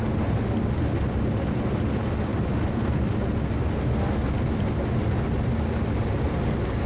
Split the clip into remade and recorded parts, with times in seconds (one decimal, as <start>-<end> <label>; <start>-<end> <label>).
0.0-6.9 recorded